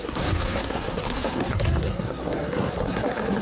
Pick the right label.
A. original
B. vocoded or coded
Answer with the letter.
B